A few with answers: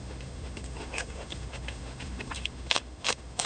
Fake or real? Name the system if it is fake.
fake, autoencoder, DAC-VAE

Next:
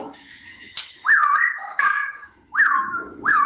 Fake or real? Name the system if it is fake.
fake, autoencoder, DAC-VAE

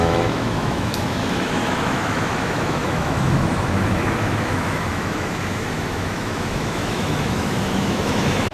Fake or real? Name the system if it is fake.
fake, autoencoder, DAC-VAE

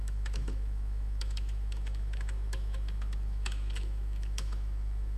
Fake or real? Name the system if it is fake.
fake, autoencoder, DAC-VAE